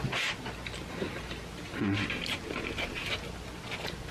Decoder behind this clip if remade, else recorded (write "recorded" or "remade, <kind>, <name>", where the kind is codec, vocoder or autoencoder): recorded